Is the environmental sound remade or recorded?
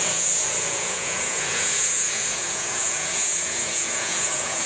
remade